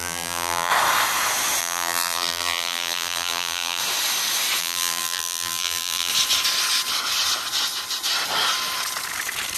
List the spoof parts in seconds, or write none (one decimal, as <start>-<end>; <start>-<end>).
0.0-0.7; 1.6-3.8; 4.6-6.1